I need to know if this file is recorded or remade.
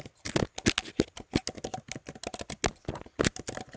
recorded